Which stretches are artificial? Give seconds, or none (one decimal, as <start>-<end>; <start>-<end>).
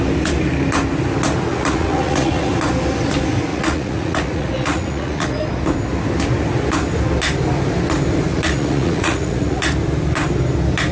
1.5-2.5; 3.5-5.4; 8.3-9.6